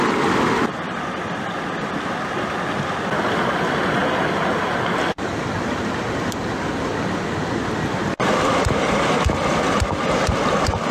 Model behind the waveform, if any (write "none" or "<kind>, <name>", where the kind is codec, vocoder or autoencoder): none